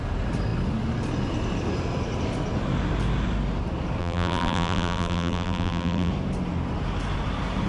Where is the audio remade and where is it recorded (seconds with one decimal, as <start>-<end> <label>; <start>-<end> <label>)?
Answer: 0.0-4.0 recorded; 4.0-6.1 remade; 6.1-7.7 recorded